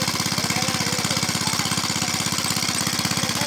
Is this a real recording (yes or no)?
yes